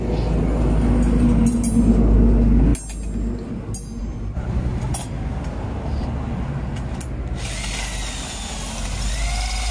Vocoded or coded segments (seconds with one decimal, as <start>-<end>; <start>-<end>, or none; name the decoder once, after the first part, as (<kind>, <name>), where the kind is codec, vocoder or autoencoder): none